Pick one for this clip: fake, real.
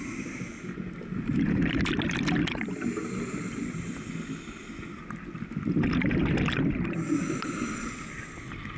real